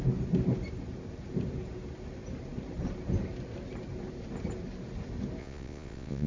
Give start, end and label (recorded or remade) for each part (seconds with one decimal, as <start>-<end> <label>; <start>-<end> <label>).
0.0-5.4 recorded; 5.4-6.3 remade